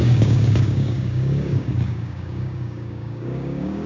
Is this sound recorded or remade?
remade